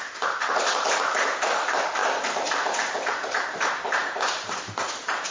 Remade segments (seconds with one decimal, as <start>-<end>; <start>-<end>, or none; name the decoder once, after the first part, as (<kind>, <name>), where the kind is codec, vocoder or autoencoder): 0.4-0.9 (vocoder, BigVGAN v2); 2.0-5.3